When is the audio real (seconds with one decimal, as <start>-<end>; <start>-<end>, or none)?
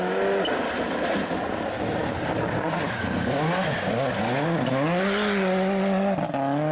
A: 0.0-6.7